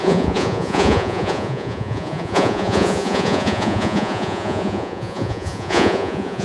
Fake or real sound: fake